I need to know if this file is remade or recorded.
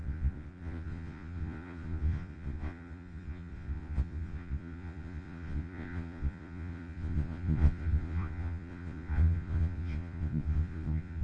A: remade